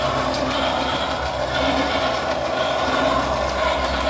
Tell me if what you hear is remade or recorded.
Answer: recorded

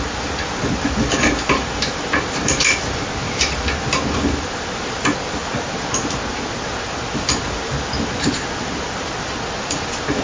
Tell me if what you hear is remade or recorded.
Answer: recorded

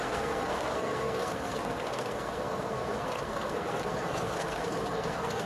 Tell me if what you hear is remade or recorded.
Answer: remade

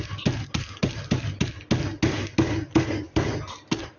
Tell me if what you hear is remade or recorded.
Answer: recorded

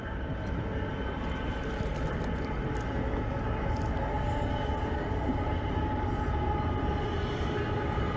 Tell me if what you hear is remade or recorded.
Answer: recorded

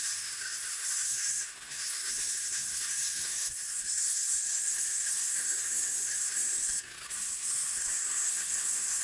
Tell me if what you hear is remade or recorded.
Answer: remade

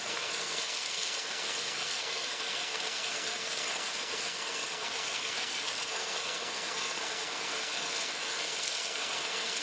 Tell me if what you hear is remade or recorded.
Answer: remade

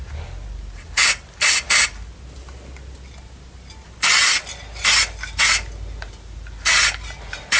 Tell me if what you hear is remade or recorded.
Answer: recorded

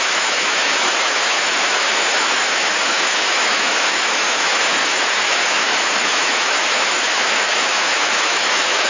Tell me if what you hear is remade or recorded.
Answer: remade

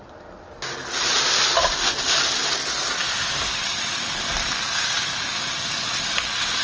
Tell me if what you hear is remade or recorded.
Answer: recorded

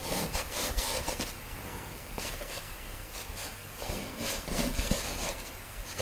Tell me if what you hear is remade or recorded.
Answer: remade